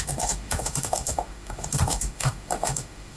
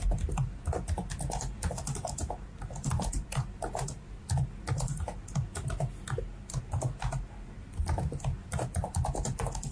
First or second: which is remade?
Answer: first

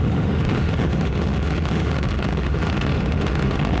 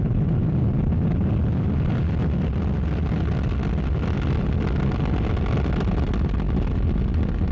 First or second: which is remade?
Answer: first